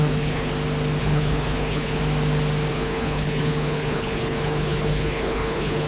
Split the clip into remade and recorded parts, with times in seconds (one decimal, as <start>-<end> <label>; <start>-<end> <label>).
0.0-0.5 remade; 0.5-1.0 recorded; 1.0-2.0 remade; 2.0-2.7 recorded; 2.7-5.9 remade